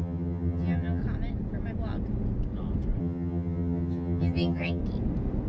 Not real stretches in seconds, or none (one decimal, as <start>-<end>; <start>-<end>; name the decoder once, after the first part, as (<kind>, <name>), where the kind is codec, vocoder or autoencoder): 0.0-1.0 (vocoder, HiFi-GAN); 3.0-4.8